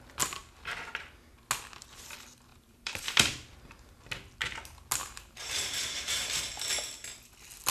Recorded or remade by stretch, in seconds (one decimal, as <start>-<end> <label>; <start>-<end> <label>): 0.0-2.5 recorded; 2.5-4.0 remade; 4.0-5.0 recorded; 5.0-6.4 remade; 6.4-7.7 recorded